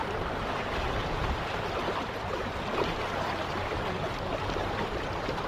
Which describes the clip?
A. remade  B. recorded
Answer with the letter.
B